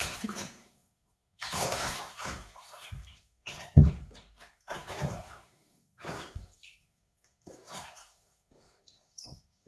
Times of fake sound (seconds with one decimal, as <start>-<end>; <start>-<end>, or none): 0.0-9.7